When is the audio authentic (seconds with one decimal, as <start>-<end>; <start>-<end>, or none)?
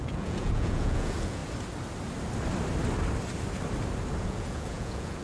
1.4-4.2